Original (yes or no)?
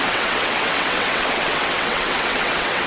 no